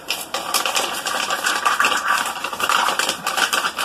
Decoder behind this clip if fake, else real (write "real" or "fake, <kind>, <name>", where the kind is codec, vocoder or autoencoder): fake, vocoder, BigVGAN v2